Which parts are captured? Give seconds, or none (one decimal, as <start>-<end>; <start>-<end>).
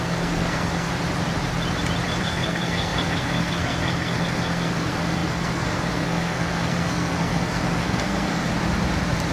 0.9-2.2; 8.5-9.3